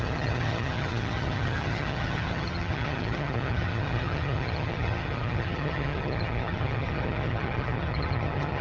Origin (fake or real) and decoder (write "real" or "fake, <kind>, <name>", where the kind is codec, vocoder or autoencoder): fake, vocoder, HiFi-GAN